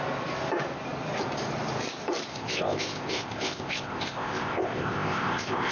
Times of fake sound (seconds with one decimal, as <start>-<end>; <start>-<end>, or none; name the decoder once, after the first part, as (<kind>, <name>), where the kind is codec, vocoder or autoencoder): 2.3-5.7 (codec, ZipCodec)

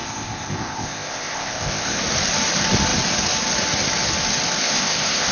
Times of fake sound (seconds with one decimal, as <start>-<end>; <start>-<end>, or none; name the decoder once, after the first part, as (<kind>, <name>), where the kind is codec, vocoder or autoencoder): 0.0-2.0 (codec, ZipCodec); 4.6-5.3

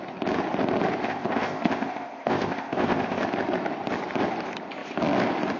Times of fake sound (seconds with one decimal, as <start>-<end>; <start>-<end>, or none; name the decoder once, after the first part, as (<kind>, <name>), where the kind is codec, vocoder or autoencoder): 1.0-3.2 (codec, ZipCodec)

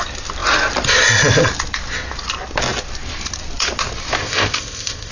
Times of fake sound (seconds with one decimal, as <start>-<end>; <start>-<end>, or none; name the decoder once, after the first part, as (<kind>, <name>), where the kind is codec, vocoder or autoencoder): 4.2-5.1 (codec, ZipCodec)